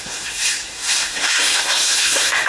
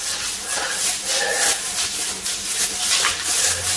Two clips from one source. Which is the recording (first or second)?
second